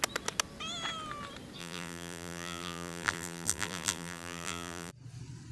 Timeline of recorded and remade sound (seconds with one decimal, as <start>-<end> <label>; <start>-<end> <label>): 0.0-1.6 recorded; 1.6-4.9 remade; 4.9-5.5 recorded